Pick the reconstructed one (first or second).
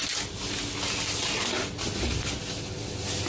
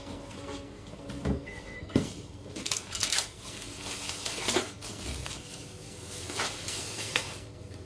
second